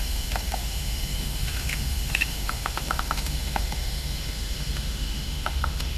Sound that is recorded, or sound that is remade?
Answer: remade